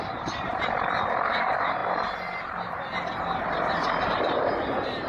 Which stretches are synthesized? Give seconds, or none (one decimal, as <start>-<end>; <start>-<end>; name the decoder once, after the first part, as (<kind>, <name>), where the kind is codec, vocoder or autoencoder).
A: none